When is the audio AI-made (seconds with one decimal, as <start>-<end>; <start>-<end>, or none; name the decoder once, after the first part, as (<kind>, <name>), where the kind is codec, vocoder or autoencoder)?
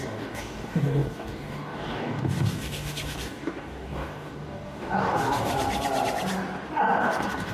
0.0-5.5 (codec, DAC); 7.0-7.5